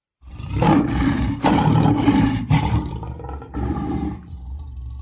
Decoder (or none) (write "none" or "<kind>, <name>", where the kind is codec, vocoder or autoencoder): vocoder, BigVGAN v2